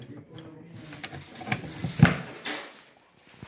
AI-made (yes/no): no